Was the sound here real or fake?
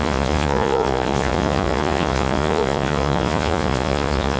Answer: fake